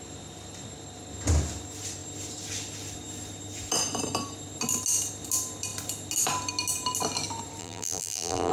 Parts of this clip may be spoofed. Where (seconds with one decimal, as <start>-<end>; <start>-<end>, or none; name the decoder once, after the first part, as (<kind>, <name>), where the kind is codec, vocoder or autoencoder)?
7.6-8.5 (vocoder, BigVGAN v2)